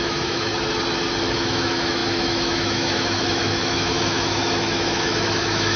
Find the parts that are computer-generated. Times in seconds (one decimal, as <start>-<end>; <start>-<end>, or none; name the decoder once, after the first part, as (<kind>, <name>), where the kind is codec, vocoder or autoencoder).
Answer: 0.0-0.5 (autoencoder, DAC-VAE); 1.2-5.8